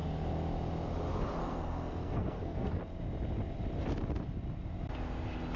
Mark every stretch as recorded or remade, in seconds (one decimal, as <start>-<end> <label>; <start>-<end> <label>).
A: 0.0-1.4 recorded; 1.4-2.8 remade; 2.8-5.6 recorded